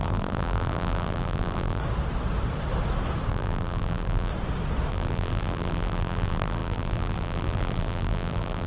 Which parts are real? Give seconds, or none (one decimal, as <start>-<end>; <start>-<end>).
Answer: 1.8-3.3; 4.3-4.9